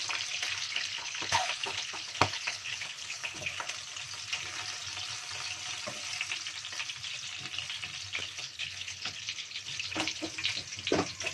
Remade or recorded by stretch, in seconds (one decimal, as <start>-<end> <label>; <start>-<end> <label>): 0.0-0.6 recorded; 0.6-3.7 remade; 3.7-8.2 recorded; 8.2-10.3 remade; 10.3-11.3 recorded